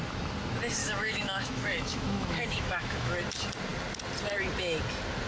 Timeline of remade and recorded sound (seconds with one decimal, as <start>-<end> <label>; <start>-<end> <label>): 0.0-0.8 recorded; 0.8-3.2 remade; 3.2-5.3 recorded